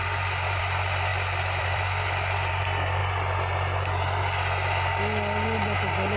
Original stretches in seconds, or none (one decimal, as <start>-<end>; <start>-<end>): 3.0-6.2